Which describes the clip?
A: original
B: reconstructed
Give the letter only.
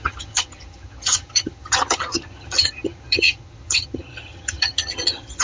B